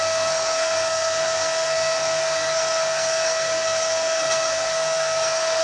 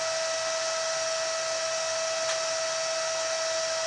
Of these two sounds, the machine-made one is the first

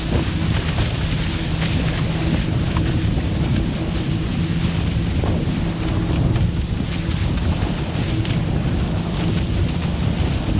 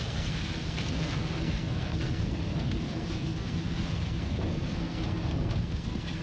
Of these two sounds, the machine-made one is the second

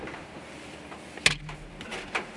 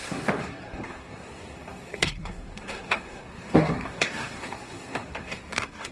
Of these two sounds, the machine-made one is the second